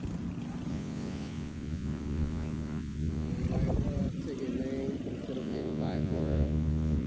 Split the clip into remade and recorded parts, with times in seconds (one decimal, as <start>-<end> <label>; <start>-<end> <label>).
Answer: 0.0-0.7 recorded; 0.7-3.3 remade; 3.3-5.4 recorded; 5.4-7.1 remade